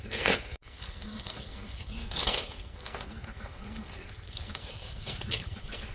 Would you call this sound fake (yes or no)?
yes